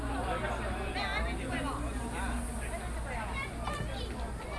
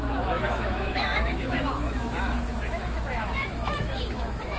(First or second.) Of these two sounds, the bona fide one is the first